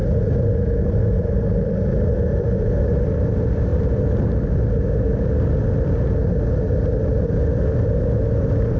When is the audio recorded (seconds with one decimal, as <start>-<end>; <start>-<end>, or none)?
1.7-2.3; 3.0-8.8

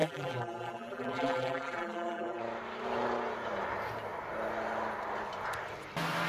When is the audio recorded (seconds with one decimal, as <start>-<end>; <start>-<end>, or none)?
2.4-6.3

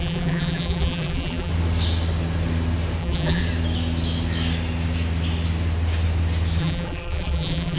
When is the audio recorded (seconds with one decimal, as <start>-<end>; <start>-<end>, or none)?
1.5-3.0; 3.4-6.6

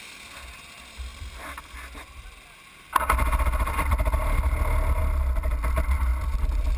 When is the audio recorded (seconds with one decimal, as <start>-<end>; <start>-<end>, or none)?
0.0-1.1; 5.0-6.1

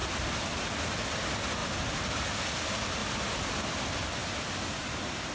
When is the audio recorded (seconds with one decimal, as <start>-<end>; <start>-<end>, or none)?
0.0-1.6; 2.2-3.0; 3.8-4.2

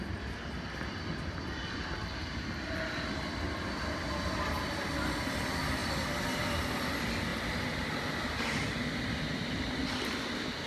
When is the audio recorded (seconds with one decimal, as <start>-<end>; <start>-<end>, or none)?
0.0-10.7

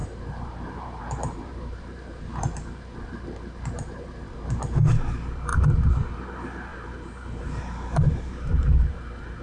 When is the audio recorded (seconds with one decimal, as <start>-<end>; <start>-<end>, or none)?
4.6-5.5; 6.2-6.7

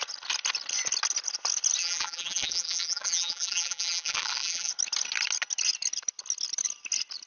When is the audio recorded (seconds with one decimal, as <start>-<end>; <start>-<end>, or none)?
0.0-1.8; 4.7-7.3